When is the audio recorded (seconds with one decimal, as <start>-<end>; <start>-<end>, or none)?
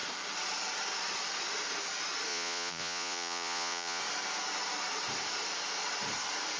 0.0-2.3; 4.0-6.6